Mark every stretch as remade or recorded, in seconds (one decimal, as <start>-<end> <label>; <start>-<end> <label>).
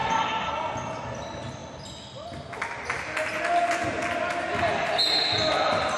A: 0.0-0.5 remade; 0.5-6.0 recorded